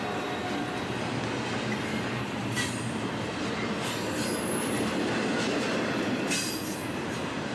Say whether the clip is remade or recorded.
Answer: recorded